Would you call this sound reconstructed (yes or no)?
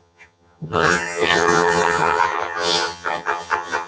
yes